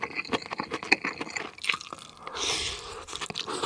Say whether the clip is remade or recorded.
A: recorded